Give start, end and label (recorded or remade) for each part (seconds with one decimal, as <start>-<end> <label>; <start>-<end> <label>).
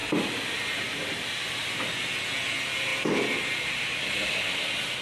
0.0-5.0 recorded